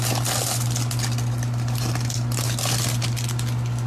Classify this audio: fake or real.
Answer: real